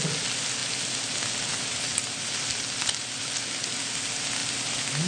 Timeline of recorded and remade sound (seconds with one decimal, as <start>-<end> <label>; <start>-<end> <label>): 0.0-5.1 recorded